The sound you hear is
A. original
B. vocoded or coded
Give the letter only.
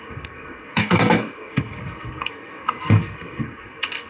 B